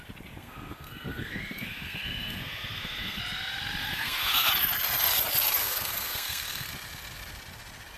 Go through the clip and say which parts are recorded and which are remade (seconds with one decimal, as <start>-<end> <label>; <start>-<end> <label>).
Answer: 0.0-0.4 recorded; 0.4-3.2 remade; 3.2-3.8 recorded; 3.8-4.5 remade; 4.5-5.6 recorded; 5.6-6.7 remade; 6.7-8.0 recorded